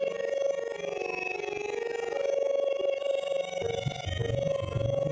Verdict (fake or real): real